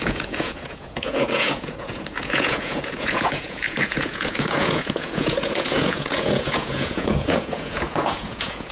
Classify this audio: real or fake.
fake